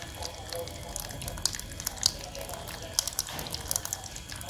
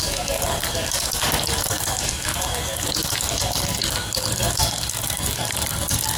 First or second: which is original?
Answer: first